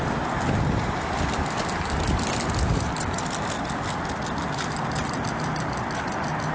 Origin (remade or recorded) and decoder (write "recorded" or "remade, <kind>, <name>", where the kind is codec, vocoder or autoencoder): recorded